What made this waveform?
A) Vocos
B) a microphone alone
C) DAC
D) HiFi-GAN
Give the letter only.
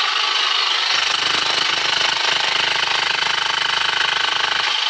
B